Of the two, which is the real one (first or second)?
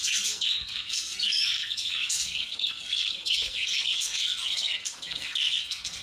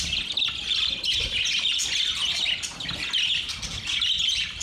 second